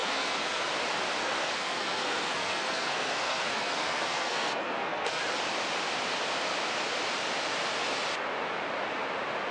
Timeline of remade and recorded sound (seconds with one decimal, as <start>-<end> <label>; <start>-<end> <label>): 0.0-0.7 remade; 0.7-1.2 recorded; 1.2-5.2 remade; 5.2-9.5 recorded